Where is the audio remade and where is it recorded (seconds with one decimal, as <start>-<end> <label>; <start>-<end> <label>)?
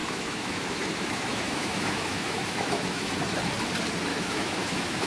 0.0-3.1 remade; 3.1-4.1 recorded; 4.1-5.1 remade